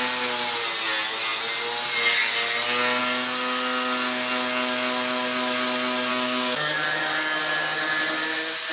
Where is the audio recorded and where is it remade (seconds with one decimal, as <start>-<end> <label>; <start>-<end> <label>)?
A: 0.0-6.1 recorded; 6.1-7.4 remade; 7.4-8.7 recorded

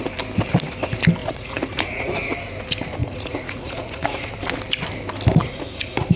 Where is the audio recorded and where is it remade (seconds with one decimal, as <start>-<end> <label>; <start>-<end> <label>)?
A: 0.0-1.2 recorded; 1.2-2.1 remade; 2.1-3.0 recorded; 3.0-4.3 remade; 4.3-5.4 recorded; 5.4-6.2 remade

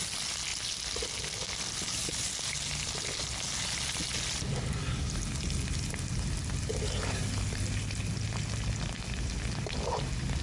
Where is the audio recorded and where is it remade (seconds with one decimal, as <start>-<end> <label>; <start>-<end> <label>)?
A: 0.0-10.4 recorded